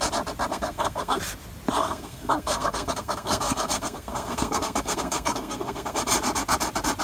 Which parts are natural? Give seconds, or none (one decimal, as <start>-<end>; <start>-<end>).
0.0-0.5; 1.2-1.8; 6.0-7.0